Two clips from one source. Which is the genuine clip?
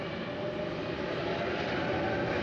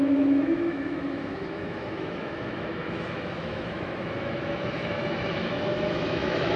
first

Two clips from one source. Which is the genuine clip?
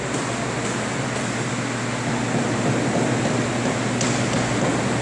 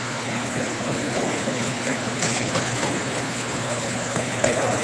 first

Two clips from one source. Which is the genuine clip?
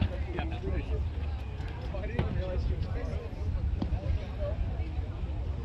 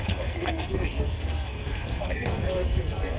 first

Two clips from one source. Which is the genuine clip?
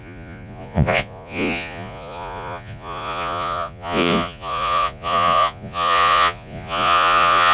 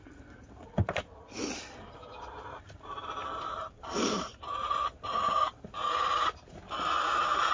second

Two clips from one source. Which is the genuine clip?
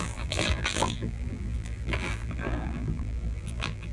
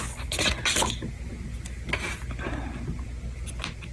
second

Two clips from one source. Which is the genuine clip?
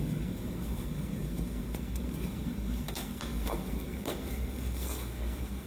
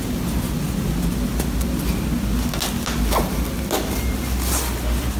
second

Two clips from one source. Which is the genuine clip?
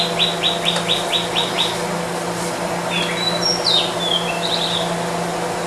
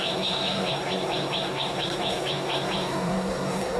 first